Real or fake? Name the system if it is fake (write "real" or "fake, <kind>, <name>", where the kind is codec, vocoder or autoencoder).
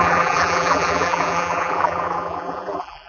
fake, vocoder, BigVGAN v2